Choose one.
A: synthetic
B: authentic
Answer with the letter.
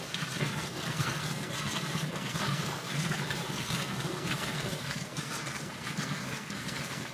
A